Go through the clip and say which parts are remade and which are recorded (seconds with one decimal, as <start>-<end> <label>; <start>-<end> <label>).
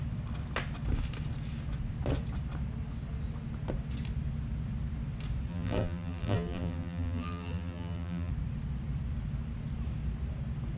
0.0-5.5 recorded; 5.5-8.3 remade; 8.3-10.8 recorded